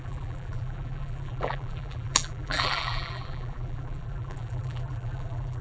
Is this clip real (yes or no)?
no